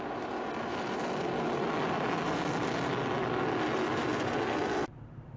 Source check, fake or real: real